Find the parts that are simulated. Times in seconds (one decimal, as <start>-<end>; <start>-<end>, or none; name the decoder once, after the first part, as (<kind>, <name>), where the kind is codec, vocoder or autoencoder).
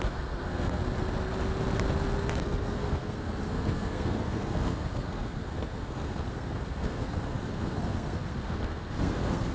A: 0.0-0.8 (codec, SNAC); 2.3-9.5